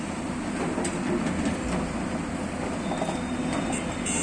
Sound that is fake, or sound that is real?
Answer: real